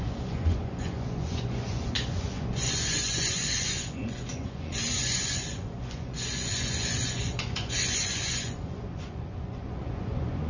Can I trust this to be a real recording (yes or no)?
no